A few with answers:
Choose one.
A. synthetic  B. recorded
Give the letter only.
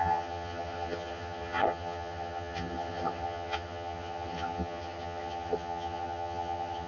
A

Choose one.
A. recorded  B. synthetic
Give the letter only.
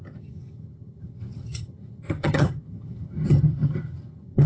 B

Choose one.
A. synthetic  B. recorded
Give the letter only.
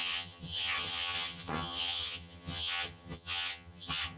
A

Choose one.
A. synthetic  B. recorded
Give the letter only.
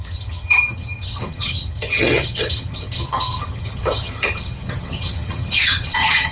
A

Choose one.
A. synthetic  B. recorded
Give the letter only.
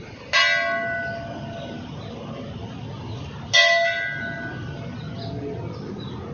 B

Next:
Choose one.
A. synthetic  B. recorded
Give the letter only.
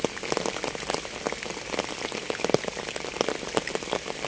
B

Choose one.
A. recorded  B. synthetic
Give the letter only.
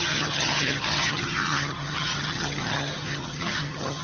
B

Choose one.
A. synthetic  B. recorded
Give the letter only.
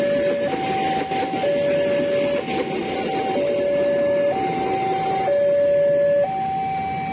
B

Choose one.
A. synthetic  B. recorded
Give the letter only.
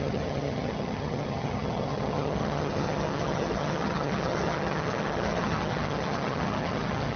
A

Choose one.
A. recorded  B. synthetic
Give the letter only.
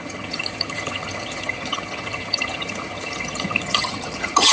B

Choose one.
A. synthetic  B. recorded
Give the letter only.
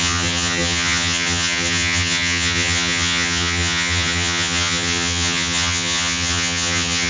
A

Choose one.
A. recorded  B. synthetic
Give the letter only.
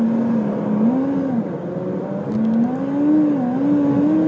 A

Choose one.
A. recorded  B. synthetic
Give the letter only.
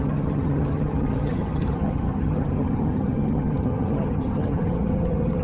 B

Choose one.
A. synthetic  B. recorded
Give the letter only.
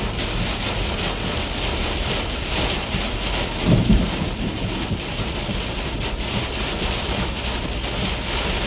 B